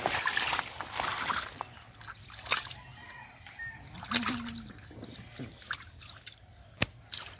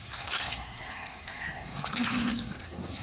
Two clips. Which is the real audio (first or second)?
first